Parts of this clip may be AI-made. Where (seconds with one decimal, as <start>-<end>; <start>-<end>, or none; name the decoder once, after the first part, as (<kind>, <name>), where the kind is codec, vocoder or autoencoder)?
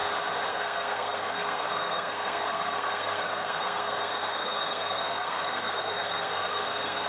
0.5-7.1 (codec, SNAC)